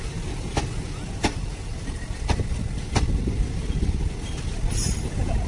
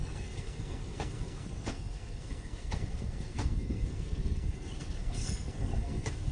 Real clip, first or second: first